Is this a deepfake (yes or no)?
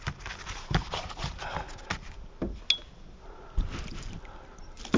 no